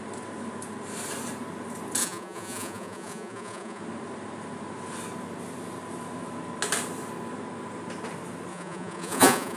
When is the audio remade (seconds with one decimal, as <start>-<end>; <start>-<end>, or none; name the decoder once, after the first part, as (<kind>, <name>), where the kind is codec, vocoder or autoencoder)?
2.0-3.8 (vocoder, Vocos); 8.5-9.6